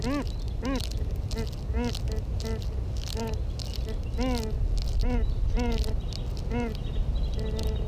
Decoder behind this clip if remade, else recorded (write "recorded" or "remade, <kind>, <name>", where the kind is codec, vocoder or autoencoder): recorded